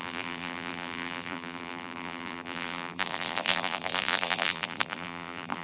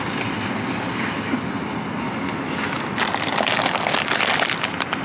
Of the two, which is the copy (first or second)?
first